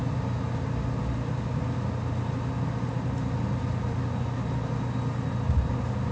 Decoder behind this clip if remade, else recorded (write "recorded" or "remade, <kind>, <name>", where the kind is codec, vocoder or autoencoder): recorded